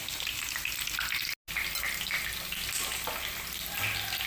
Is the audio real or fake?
real